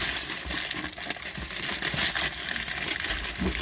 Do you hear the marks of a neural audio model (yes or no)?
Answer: no